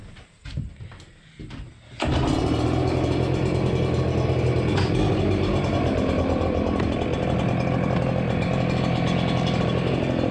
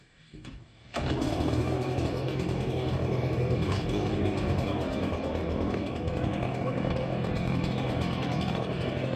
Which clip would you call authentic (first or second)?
first